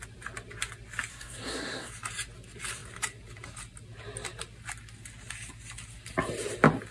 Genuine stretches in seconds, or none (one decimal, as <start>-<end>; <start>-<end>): 0.0-1.1; 1.9-6.9